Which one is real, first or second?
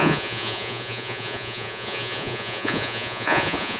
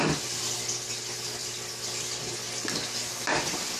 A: second